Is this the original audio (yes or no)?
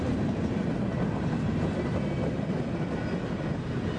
yes